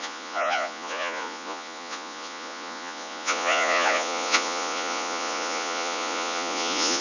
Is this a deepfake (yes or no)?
yes